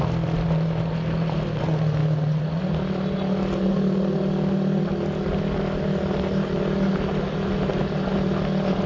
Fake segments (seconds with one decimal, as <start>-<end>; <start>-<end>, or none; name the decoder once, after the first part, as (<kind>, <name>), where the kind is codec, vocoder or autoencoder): none